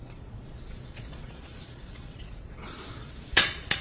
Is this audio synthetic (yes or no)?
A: yes